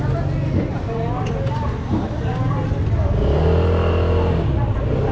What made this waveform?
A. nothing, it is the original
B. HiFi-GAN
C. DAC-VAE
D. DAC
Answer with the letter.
A